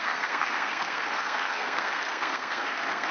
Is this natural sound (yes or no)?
no